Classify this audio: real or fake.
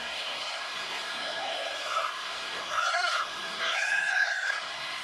fake